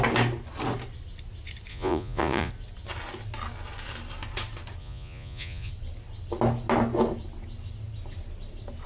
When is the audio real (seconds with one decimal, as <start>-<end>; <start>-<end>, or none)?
0.0-1.7; 2.5-4.8; 5.7-8.9